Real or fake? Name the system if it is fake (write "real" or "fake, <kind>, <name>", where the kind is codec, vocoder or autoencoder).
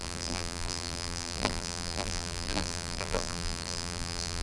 fake, vocoder, BigVGAN v2